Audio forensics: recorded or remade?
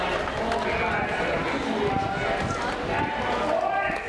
recorded